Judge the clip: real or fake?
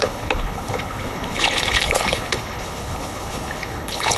fake